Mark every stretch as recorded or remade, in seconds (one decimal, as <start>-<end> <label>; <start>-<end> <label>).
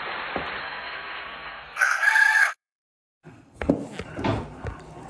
0.0-0.6 recorded; 0.6-3.7 remade; 3.7-5.1 recorded